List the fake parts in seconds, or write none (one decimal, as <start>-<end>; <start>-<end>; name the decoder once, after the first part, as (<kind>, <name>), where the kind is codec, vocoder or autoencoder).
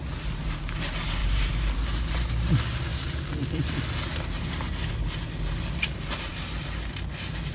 1.2-2.3 (vocoder, BigVGAN v2)